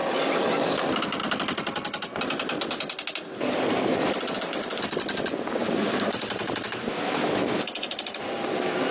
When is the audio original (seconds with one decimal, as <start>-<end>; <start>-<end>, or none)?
1.2-5.6; 6.6-8.9